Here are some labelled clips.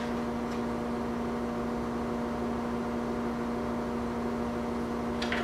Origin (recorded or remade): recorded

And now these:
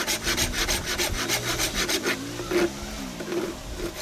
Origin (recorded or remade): recorded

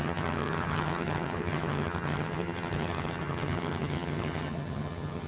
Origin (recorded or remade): remade